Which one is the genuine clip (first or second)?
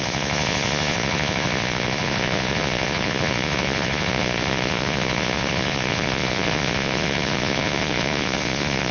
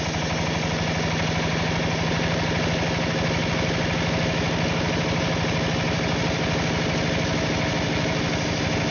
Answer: second